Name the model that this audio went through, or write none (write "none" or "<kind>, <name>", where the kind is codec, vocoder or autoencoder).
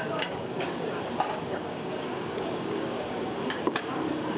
codec, DAC